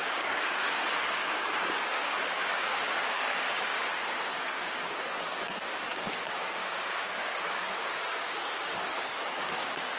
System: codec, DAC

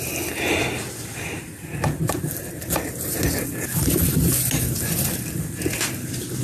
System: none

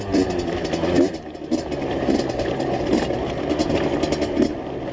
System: none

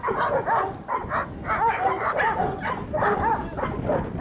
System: none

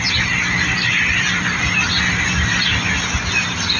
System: none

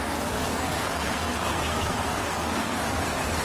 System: codec, SNAC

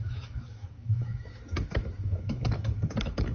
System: autoencoder, DAC-VAE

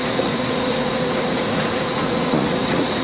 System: vocoder, Vocos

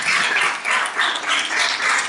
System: none